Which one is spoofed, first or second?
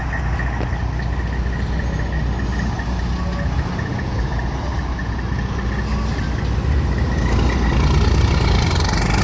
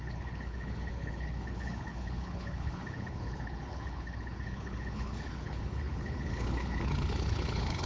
second